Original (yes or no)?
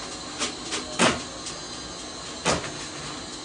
yes